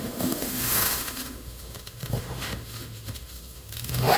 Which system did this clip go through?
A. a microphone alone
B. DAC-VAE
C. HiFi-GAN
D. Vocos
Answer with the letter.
B